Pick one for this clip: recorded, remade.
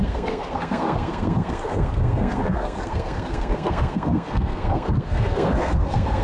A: remade